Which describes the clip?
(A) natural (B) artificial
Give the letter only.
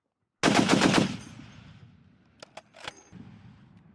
A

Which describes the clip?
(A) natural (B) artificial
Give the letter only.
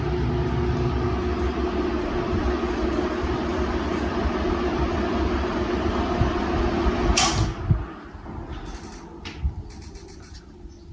A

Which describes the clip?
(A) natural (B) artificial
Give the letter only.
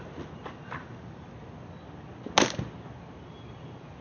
A